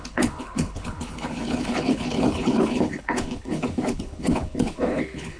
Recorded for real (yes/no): no